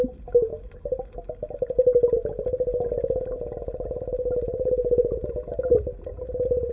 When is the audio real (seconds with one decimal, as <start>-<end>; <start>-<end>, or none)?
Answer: 0.0-6.7